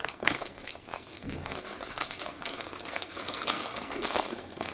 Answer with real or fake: fake